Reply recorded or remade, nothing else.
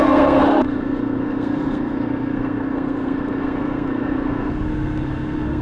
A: remade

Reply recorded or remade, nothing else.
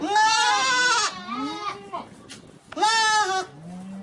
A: recorded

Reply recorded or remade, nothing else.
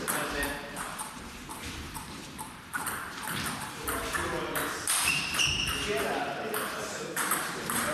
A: remade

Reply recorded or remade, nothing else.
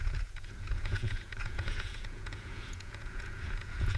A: remade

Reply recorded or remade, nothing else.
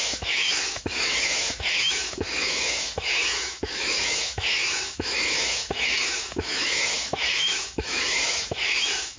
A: remade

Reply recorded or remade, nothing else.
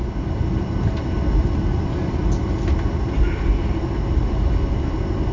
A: recorded